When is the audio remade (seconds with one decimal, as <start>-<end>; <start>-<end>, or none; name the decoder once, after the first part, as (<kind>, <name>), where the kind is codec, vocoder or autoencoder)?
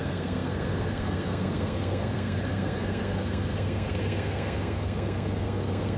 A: 0.0-6.0 (codec, SNAC)